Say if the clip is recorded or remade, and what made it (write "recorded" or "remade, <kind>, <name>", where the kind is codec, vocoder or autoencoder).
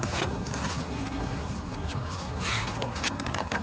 remade, codec, SNAC